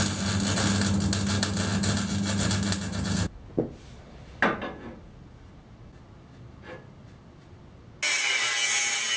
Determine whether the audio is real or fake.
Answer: real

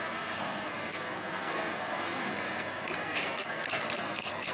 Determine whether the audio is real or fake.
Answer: fake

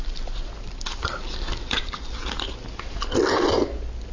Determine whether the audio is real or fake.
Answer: real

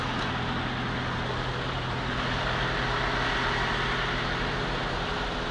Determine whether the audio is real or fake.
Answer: real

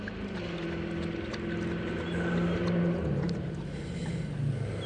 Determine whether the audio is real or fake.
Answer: real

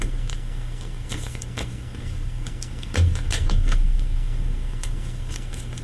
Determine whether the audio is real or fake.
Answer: fake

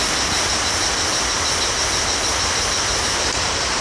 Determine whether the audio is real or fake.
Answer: real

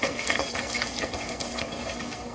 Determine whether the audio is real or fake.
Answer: fake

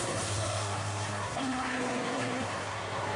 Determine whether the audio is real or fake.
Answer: fake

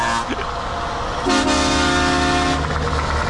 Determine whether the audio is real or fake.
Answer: real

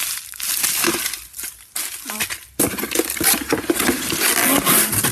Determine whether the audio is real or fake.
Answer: real